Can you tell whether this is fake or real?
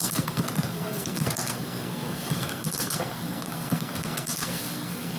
fake